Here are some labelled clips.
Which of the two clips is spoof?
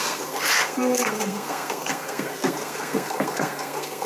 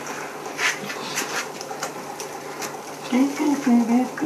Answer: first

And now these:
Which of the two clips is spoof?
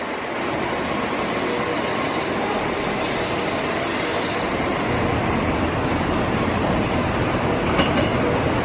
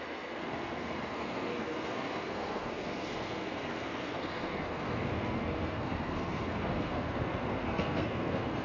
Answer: second